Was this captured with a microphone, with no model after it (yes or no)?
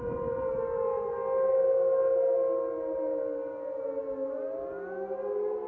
yes